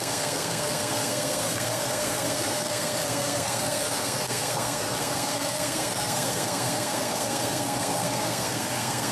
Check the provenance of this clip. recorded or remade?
remade